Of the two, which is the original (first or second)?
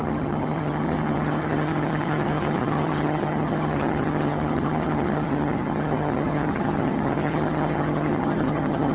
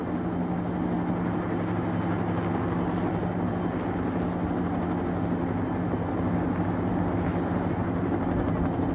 second